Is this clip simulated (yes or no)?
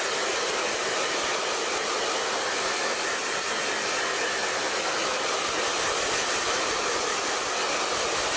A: no